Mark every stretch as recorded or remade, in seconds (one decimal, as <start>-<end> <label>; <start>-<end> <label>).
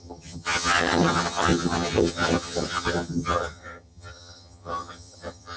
0.0-5.6 remade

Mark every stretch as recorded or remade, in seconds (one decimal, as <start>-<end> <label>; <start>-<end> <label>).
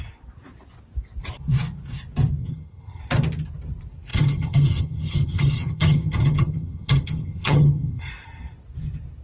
0.0-2.4 recorded; 2.4-3.0 remade; 3.0-4.1 recorded; 4.1-8.1 remade; 8.1-9.2 recorded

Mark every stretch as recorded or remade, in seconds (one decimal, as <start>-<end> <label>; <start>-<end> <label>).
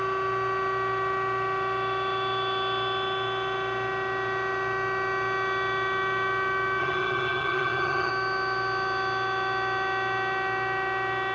0.0-6.8 recorded; 6.8-8.1 remade; 8.1-11.3 recorded